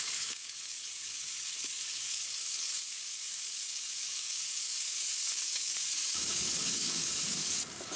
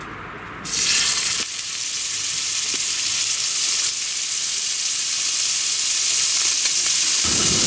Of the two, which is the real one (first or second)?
second